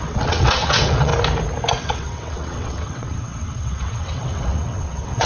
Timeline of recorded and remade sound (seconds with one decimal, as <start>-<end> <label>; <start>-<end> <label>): 0.0-1.1 remade; 1.1-1.8 recorded; 1.8-5.3 remade